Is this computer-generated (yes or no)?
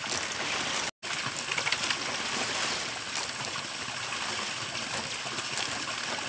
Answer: no